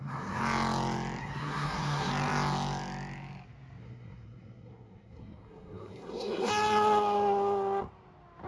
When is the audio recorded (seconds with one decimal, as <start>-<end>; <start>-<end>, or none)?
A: 0.4-1.2; 2.1-3.8; 6.5-8.5